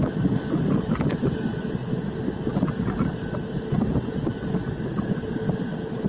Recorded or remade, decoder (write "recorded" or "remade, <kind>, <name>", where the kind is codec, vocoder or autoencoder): recorded